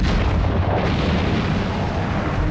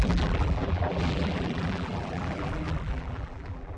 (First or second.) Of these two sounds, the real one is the first